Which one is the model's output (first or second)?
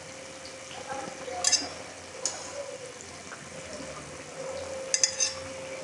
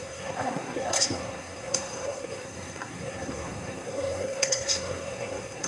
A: second